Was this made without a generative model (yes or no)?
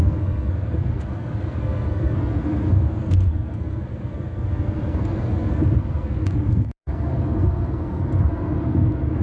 no